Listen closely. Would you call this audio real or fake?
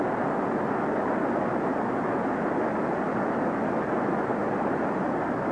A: real